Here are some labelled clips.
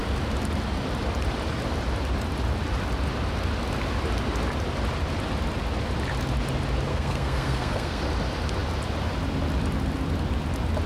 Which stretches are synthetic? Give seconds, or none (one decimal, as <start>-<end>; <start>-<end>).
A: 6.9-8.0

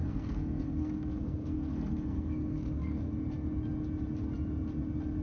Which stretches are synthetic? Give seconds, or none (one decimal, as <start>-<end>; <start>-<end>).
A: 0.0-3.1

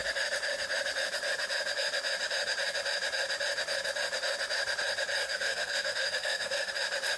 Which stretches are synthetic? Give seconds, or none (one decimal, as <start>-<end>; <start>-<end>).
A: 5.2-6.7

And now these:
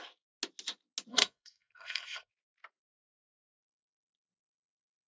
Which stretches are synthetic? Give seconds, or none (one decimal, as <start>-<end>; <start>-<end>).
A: 1.1-2.3